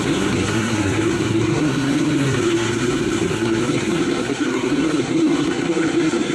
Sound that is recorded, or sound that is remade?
remade